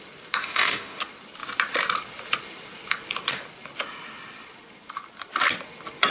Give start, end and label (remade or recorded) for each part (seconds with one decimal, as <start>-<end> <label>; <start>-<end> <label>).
0.0-0.4 recorded; 0.4-1.0 remade; 1.0-6.1 recorded